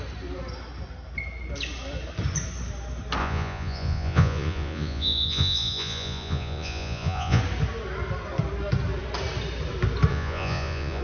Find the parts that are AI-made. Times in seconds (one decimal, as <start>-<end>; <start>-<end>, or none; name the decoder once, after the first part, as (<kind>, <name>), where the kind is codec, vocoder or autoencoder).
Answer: 3.2-7.4 (vocoder, Vocos); 10.1-11.0